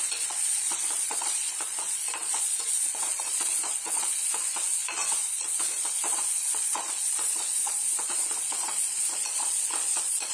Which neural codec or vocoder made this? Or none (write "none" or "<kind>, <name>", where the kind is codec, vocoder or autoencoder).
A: vocoder, Vocos